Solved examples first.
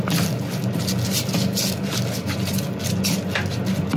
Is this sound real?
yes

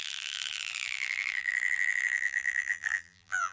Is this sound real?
no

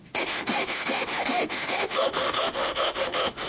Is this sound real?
no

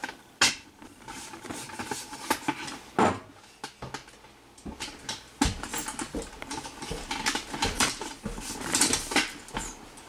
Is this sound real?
yes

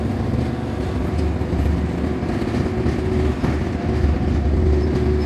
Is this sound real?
yes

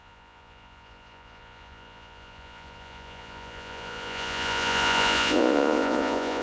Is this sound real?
no